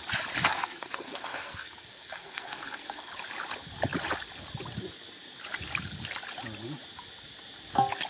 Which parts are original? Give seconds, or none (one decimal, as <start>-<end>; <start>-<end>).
0.0-0.4; 3.1-8.1

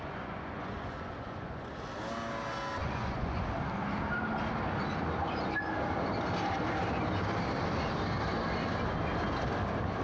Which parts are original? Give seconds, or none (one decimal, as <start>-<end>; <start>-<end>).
1.7-2.8; 3.4-10.0

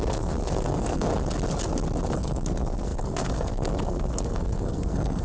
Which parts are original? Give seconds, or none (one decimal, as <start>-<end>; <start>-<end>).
1.1-2.0

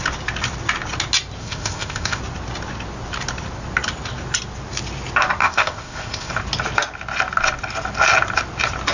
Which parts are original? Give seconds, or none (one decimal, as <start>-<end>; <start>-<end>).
0.0-1.4; 2.2-5.4; 6.3-8.9

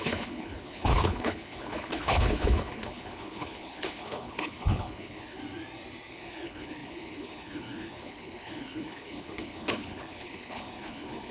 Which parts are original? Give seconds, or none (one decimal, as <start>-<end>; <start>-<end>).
5.4-6.1

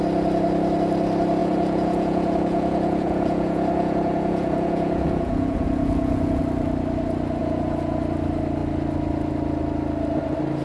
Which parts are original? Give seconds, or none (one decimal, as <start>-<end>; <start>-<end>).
0.0-1.4; 6.4-7.4; 8.0-10.6

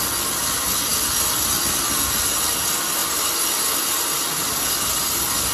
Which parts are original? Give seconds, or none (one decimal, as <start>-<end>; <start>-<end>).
0.0-5.5